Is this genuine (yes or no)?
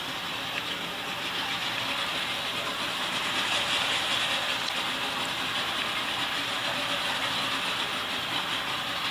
yes